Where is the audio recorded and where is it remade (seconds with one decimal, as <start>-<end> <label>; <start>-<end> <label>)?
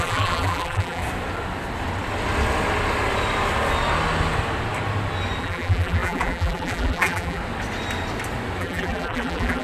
0.0-1.0 remade; 1.0-5.4 recorded; 5.4-7.4 remade; 7.4-8.6 recorded; 8.6-9.6 remade